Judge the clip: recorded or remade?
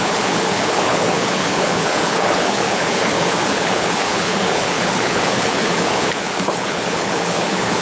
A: remade